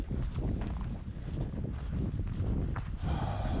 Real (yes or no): yes